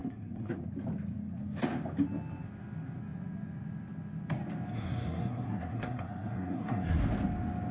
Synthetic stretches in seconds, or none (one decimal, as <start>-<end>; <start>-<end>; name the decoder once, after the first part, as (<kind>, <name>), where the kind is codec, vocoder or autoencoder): 0.0-0.6 (codec, SNAC); 4.7-7.0